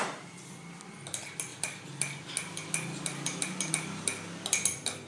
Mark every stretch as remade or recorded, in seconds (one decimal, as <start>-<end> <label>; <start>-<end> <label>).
0.0-5.1 recorded